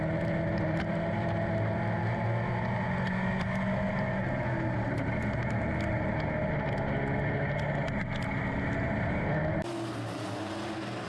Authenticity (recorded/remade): recorded